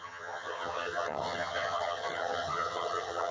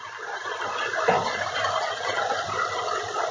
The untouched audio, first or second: second